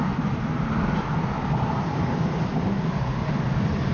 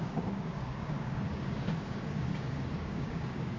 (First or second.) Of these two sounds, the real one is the first